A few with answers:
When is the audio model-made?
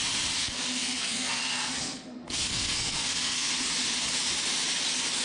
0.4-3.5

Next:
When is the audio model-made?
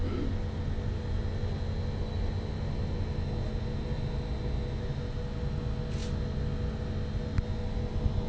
none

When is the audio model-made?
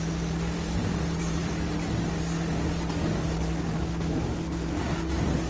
none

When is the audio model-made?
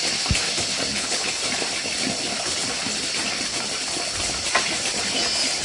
0.9-1.4